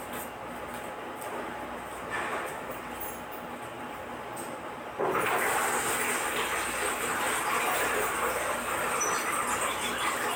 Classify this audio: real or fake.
real